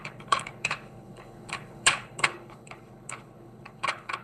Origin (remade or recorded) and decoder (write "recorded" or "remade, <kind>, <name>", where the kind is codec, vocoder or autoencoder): remade, codec, HILCodec